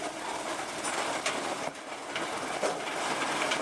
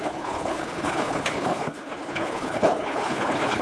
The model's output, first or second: second